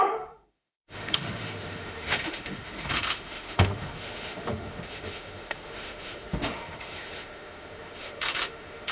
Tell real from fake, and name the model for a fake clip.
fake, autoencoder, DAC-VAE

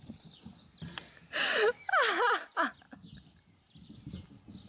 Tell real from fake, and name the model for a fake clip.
real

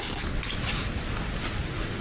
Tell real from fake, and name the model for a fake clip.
real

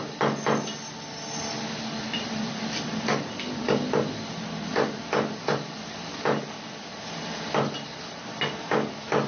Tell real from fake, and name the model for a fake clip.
real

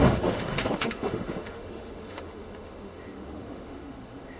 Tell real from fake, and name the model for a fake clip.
fake, autoencoder, DAC-VAE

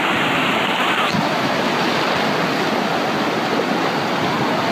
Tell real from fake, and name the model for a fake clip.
real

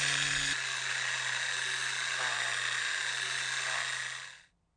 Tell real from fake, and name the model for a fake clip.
real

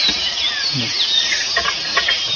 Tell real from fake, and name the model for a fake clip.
real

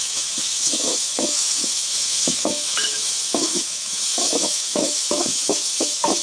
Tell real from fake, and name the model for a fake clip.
fake, autoencoder, DAC-VAE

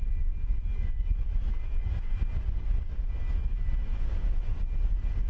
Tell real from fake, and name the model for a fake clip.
real